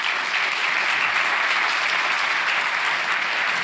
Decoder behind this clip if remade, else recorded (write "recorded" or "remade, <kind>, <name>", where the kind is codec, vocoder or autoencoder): recorded